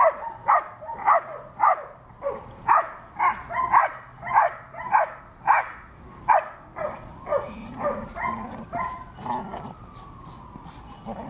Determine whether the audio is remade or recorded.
recorded